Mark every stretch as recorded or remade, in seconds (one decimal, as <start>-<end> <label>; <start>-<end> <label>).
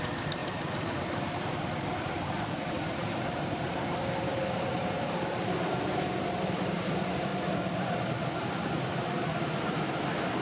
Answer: 0.0-7.3 remade; 7.3-9.4 recorded; 9.4-10.4 remade